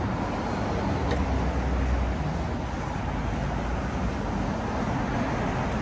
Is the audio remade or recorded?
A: recorded